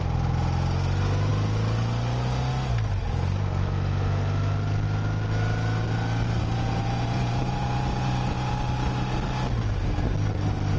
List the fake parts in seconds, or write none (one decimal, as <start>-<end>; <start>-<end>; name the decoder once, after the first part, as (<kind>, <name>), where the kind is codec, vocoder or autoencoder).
6.4-8.5 (vocoder, Vocos)